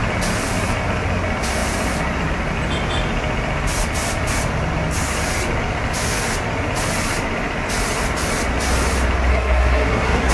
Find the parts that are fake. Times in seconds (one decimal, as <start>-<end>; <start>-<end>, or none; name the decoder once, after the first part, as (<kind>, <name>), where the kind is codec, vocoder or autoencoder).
9.3-10.3 (codec, SNAC)